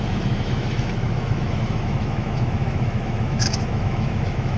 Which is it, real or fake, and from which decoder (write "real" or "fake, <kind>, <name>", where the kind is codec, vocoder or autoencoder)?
fake, autoencoder, DAC-VAE